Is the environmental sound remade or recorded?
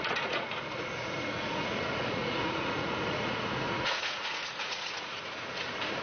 remade